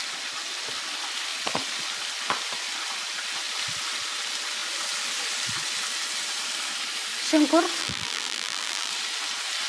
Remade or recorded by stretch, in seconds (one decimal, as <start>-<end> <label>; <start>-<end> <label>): 0.0-7.8 recorded; 7.8-8.9 remade; 8.9-9.7 recorded